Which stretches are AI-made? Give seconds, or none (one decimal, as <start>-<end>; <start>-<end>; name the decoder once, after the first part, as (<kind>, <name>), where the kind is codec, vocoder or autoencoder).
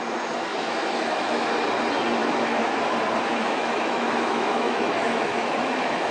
0.5-1.5 (autoencoder, DAC-VAE); 2.2-2.8; 3.3-6.1